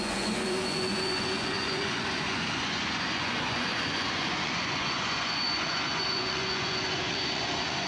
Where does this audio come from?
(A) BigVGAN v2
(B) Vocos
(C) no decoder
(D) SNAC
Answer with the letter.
B